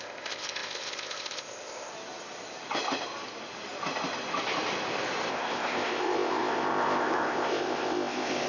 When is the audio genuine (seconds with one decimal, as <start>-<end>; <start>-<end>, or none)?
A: 1.9-5.3